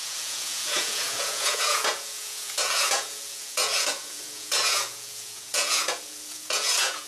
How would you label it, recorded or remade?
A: remade